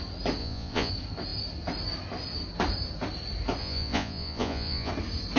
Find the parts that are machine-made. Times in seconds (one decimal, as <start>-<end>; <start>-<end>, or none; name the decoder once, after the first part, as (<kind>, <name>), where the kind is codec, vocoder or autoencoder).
0.4-0.9 (vocoder, Vocos); 3.6-4.9